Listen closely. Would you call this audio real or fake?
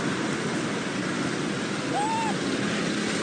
real